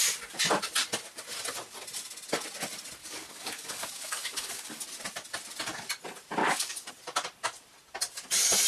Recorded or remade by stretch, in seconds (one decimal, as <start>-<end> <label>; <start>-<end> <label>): 0.0-3.0 recorded; 3.0-4.8 remade; 4.8-6.4 recorded; 6.4-6.9 remade; 6.9-8.7 recorded